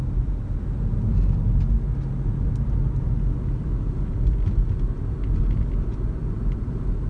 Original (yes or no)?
yes